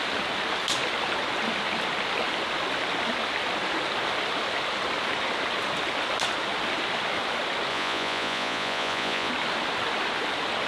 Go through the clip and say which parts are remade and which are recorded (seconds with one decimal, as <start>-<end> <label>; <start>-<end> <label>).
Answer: 0.0-7.7 recorded; 7.7-9.3 remade; 9.3-10.7 recorded